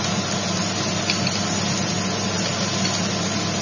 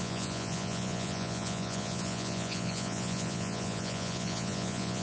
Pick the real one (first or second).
first